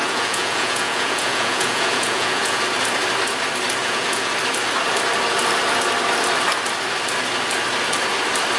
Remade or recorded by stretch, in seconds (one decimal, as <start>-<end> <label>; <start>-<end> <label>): 0.0-2.6 remade; 2.6-3.8 recorded; 3.8-4.3 remade; 4.3-8.6 recorded